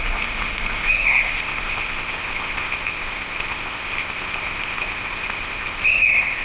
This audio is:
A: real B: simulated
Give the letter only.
B